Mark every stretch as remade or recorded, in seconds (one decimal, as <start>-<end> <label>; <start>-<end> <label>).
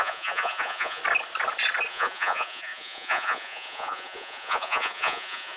0.0-1.0 remade; 1.0-1.9 recorded; 1.9-5.6 remade